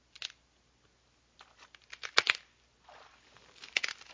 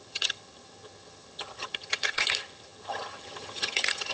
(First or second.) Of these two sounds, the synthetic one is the second